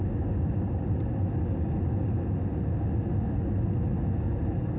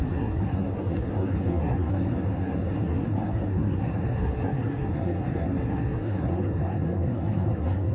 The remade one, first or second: second